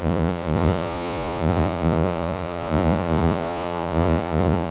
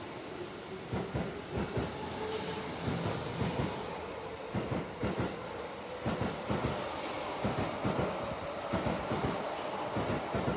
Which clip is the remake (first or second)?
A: first